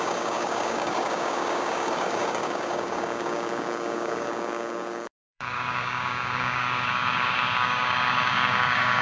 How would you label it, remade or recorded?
remade